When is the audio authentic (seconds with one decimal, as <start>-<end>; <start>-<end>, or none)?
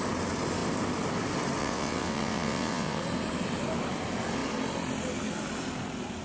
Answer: 0.0-1.6; 3.0-6.2